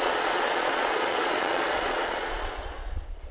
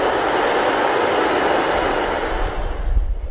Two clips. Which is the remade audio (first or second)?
first